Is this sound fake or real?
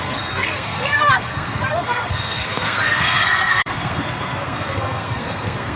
fake